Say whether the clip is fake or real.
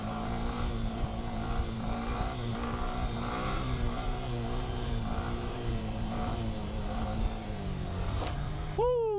fake